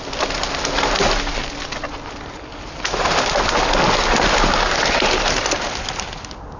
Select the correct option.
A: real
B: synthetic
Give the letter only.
A